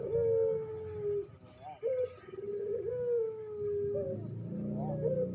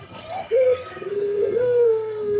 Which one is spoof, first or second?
second